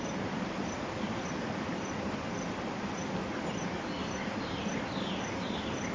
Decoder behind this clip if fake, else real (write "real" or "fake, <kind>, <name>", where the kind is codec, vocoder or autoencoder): real